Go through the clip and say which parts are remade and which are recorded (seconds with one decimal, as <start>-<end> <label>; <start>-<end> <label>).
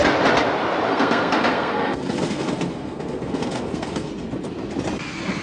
0.0-0.9 recorded; 0.9-4.1 remade; 4.1-5.4 recorded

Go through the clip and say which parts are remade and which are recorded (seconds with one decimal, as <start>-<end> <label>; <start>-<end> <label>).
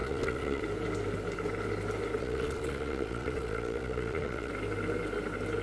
0.0-0.6 remade; 0.6-2.2 recorded; 2.2-4.5 remade; 4.5-5.6 recorded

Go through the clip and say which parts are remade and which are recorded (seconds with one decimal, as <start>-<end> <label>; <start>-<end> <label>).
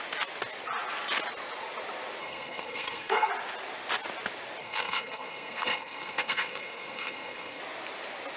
0.0-2.2 recorded; 2.2-3.3 remade; 3.3-4.6 recorded; 4.6-7.6 remade; 7.6-8.4 recorded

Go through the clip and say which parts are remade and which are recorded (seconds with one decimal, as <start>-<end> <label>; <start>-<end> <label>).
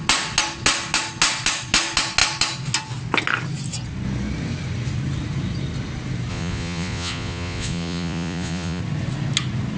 0.0-6.3 recorded; 6.3-8.8 remade; 8.8-9.8 recorded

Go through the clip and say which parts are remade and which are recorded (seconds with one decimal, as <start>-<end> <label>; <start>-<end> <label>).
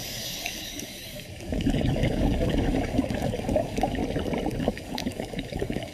0.0-4.0 remade; 4.0-4.6 recorded; 4.6-5.9 remade